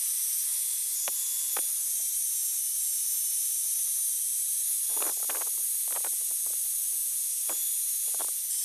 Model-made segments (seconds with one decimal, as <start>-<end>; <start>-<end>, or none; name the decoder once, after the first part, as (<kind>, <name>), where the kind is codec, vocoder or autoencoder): none